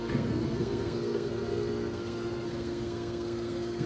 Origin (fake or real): fake